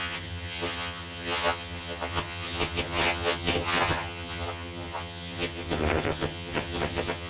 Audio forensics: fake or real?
fake